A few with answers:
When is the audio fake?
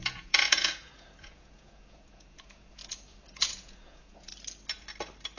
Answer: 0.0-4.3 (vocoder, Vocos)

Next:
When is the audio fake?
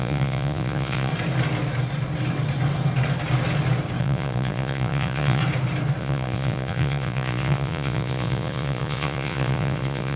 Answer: 0.0-1.1 (vocoder, Vocos); 4.0-5.4; 6.0-10.2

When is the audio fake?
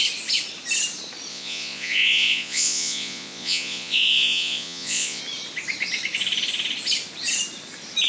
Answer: 1.3-5.2 (vocoder, Vocos)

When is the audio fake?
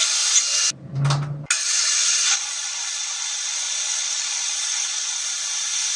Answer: 1.6-5.2 (vocoder, Vocos)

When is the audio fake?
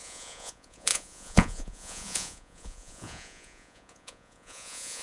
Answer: 0.0-5.0 (vocoder, Vocos)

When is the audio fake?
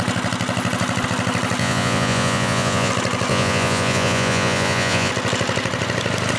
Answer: 1.6-2.9 (vocoder, Vocos); 3.3-5.1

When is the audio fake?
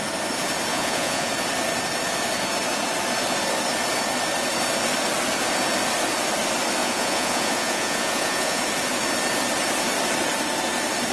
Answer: 0.7-1.3 (vocoder, Vocos); 6.8-8.6